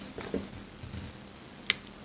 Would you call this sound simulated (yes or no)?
no